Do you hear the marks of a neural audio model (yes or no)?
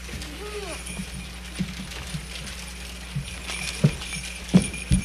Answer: no